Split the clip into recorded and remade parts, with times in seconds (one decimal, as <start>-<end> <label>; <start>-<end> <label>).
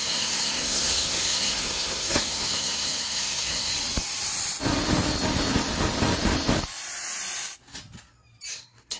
0.0-3.7 remade; 3.7-8.5 recorded; 8.5-9.0 remade